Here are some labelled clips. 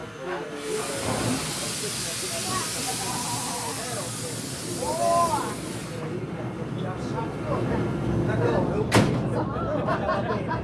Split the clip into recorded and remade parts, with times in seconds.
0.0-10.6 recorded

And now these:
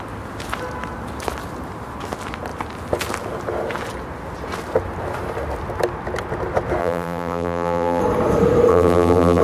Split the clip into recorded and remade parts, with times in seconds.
0.0-6.8 recorded; 6.8-8.0 remade; 8.0-8.7 recorded; 8.7-9.4 remade